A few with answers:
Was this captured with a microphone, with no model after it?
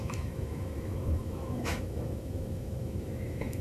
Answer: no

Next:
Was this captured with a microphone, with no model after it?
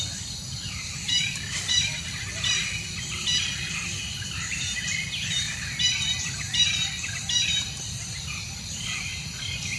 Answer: no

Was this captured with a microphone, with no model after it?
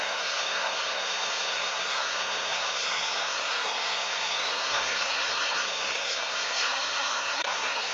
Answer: no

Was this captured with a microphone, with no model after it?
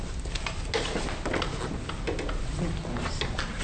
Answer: yes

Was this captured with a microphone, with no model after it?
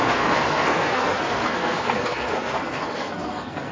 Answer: no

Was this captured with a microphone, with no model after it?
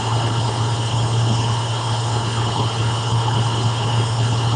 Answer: no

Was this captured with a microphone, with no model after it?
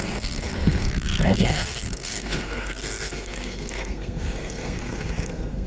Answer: no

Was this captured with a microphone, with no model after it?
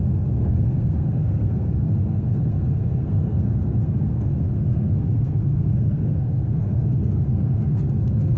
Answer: no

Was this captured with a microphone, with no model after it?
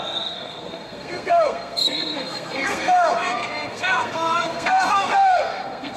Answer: no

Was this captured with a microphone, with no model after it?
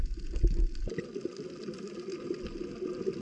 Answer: yes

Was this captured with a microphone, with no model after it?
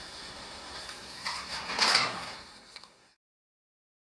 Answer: no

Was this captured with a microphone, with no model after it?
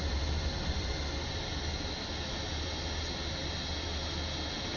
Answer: yes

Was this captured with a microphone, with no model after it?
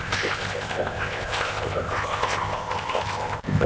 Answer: no